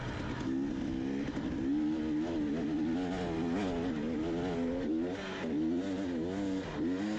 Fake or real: real